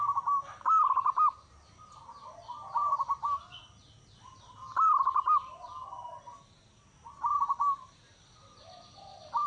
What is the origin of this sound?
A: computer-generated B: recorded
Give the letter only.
B